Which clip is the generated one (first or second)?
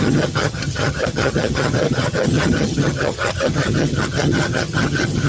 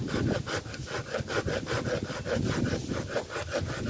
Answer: first